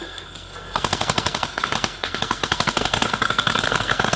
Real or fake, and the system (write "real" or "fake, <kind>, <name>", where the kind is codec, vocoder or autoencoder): fake, codec, SNAC